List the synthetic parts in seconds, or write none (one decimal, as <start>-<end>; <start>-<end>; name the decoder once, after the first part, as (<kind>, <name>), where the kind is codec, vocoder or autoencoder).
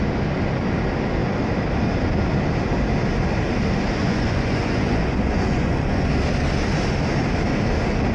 4.0-6.1 (vocoder, Vocos)